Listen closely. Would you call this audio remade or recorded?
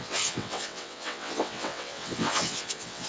remade